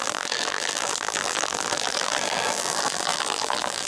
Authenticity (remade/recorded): remade